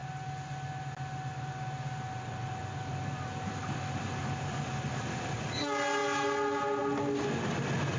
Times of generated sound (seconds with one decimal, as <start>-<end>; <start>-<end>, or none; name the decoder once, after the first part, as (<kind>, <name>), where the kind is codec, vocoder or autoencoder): 2.6-5.5 (vocoder, BigVGAN v2)